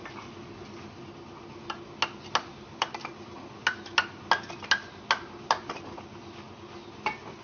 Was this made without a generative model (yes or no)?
yes